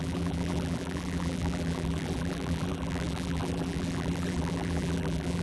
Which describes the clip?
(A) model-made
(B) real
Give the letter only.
A